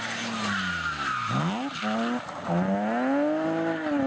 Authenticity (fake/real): real